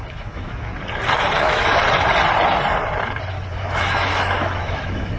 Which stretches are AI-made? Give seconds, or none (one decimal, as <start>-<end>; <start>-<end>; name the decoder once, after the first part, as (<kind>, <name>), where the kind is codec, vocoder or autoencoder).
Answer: 0.0-0.7 (autoencoder, DAC-VAE); 1.4-1.8; 3.5-5.2